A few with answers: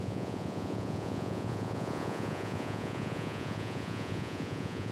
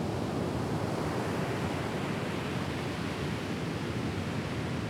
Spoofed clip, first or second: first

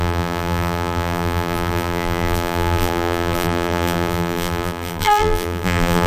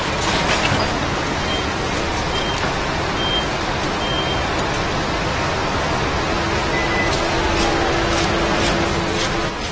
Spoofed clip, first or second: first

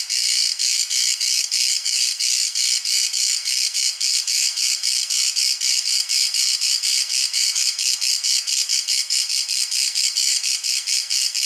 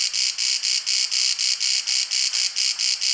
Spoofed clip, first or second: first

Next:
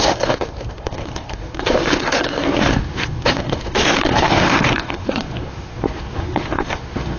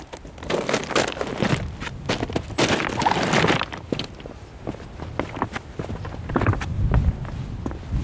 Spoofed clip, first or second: first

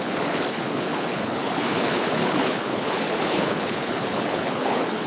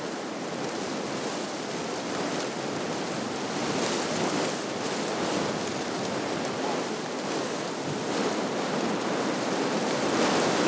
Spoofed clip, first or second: first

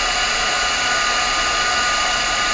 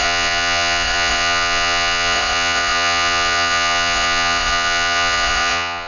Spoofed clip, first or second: second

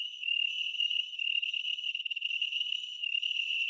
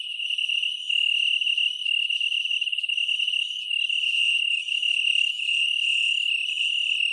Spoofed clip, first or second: first